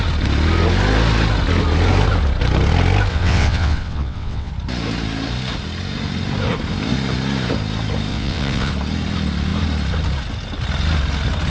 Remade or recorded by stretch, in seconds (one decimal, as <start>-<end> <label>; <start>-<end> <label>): 0.0-3.1 recorded; 3.1-4.5 remade; 4.5-8.1 recorded; 8.1-8.7 remade; 8.7-11.5 recorded